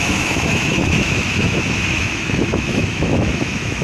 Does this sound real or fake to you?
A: fake